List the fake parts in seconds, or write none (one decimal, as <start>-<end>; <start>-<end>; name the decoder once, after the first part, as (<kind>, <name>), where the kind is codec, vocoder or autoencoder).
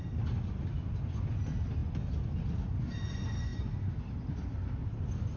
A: none